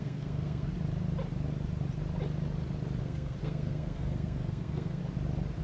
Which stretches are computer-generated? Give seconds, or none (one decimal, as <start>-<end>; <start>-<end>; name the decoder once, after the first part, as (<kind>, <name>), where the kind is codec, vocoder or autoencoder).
0.0-0.7 (codec, SNAC); 3.0-5.0